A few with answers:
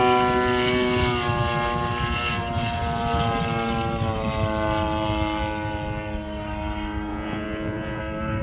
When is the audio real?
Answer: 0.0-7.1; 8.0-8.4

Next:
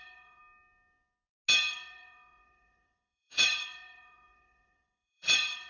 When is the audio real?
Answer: 0.4-1.7

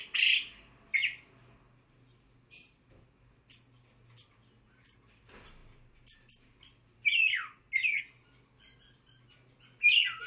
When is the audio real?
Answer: 0.0-10.3

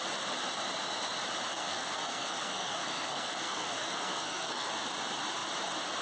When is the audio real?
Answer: 0.0-1.5; 4.7-6.0

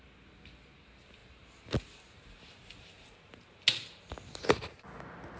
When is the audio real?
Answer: 0.0-5.4

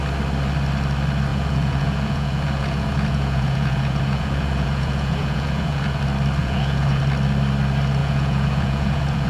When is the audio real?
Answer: 0.0-1.3; 6.0-6.4; 7.0-8.0